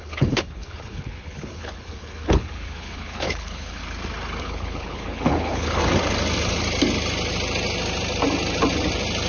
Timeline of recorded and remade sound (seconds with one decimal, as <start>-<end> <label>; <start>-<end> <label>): 0.0-3.8 remade; 3.8-4.4 recorded; 4.4-5.8 remade; 5.8-9.3 recorded

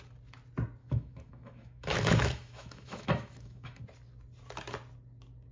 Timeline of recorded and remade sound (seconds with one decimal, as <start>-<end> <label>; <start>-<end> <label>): 0.0-0.8 recorded; 0.8-3.8 remade; 3.8-5.5 recorded

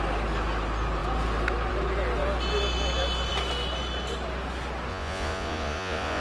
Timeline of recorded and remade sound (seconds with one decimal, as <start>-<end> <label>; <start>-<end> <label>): 0.0-4.9 recorded; 4.9-6.2 remade

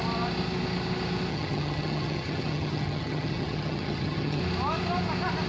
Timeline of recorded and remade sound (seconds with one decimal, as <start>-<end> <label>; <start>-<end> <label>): 0.0-1.3 recorded; 1.3-4.4 remade; 4.4-5.5 recorded

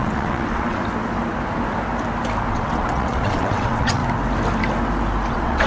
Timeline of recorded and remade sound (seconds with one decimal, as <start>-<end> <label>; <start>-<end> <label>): 0.0-0.8 remade; 0.8-2.5 recorded; 2.5-4.0 remade; 4.0-5.3 recorded; 5.3-5.7 remade

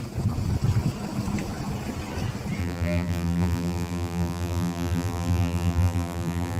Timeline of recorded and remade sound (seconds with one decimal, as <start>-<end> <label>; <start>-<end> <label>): 0.0-2.6 recorded; 2.6-6.6 remade

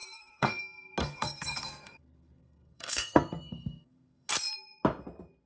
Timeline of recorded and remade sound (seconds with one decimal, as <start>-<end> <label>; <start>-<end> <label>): 0.0-0.6 remade; 0.6-1.0 recorded; 1.0-4.3 remade; 4.3-5.5 recorded